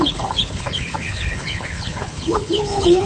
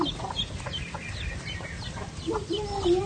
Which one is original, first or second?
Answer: second